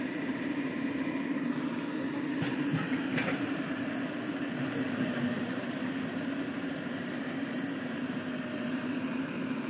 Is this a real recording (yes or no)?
no